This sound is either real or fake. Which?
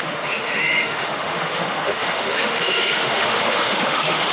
fake